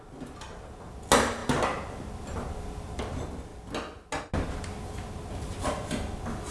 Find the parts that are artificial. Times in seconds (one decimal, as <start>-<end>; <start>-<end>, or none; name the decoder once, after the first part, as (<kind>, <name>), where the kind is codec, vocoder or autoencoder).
none